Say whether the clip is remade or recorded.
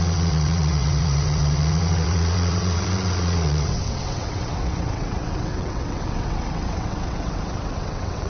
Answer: remade